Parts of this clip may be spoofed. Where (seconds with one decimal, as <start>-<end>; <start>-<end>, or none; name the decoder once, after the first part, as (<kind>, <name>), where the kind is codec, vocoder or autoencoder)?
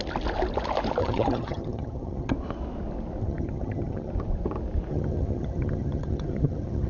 1.0-2.3 (vocoder, HiFi-GAN); 3.2-4.1; 4.9-6.9